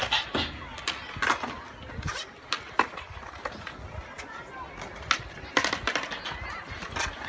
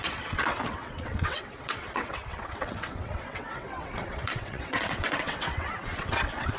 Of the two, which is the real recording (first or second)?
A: first